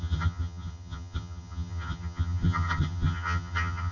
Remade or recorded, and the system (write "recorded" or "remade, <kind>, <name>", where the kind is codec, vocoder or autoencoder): remade, vocoder, HiFi-GAN